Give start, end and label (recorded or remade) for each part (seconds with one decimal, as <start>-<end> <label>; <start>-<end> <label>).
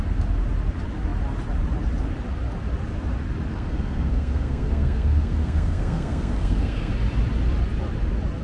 0.0-3.5 recorded; 3.5-6.9 remade; 6.9-8.4 recorded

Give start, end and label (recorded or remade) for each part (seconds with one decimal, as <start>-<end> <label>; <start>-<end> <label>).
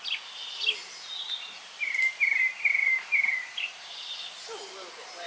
0.0-0.8 recorded; 0.8-1.9 remade; 1.9-2.8 recorded; 2.8-4.0 remade; 4.0-5.3 recorded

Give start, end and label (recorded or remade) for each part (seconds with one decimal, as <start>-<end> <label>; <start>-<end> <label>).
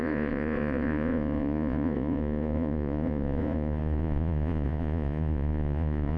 0.0-6.2 remade